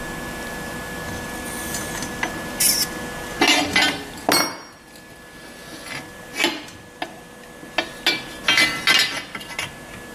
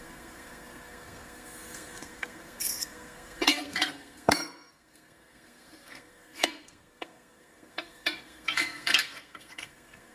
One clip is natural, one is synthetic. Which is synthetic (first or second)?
second